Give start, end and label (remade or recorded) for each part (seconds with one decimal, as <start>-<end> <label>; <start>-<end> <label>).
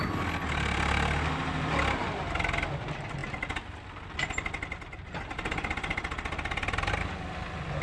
0.0-7.8 recorded